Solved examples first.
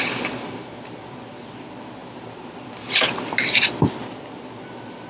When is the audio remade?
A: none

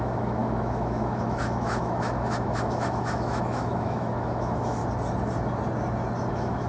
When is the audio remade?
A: 0.0-4.8; 6.3-6.7

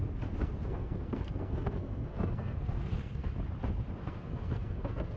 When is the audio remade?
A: 0.4-3.3; 4.0-5.2

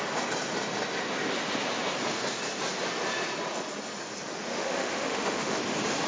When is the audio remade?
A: 4.5-5.6

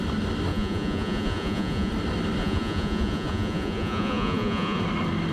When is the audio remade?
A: 0.5-1.9; 2.4-4.8

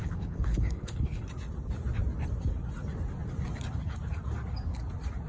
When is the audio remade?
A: 0.0-1.2

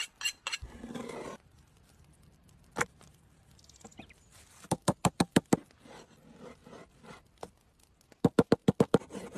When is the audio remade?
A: 3.9-5.2; 8.6-9.4